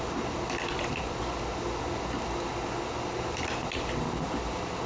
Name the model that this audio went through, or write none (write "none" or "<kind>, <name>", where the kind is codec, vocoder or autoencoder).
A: none